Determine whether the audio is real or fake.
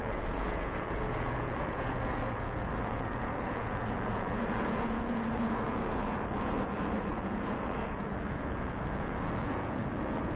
fake